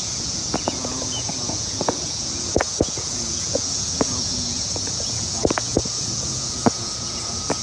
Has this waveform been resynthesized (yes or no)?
yes